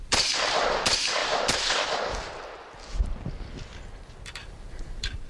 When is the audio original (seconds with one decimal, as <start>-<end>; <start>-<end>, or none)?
0.0-5.3